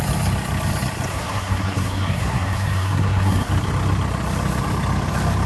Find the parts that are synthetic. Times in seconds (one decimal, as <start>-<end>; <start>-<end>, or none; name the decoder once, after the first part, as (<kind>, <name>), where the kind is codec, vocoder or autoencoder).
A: 1.1-3.5 (codec, SNAC)

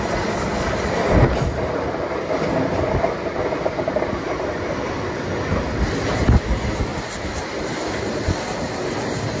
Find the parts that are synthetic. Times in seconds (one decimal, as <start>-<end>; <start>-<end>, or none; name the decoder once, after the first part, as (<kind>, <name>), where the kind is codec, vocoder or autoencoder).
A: none

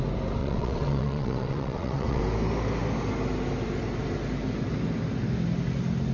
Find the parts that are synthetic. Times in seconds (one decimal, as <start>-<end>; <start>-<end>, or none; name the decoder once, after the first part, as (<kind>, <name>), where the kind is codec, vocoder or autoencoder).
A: 0.4-2.2 (vocoder, WaveNeXt)

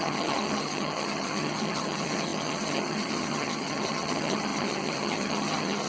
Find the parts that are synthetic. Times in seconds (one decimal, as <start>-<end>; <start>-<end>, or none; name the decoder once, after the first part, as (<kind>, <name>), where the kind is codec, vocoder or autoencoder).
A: 0.0-5.9 (vocoder, HiFi-GAN)